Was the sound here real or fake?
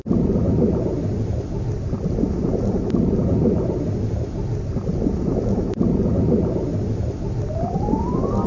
real